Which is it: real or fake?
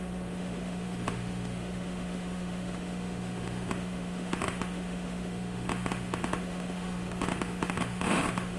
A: fake